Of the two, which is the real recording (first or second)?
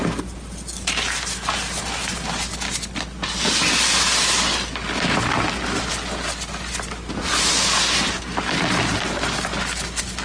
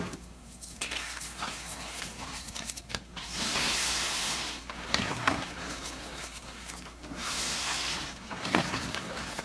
first